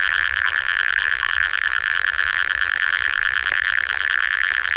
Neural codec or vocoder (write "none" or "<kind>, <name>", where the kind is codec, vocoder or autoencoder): vocoder, BigVGAN v2